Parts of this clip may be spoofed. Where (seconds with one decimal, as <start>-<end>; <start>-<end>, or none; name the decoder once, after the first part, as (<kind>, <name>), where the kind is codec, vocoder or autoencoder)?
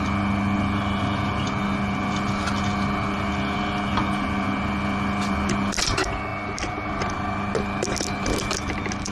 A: none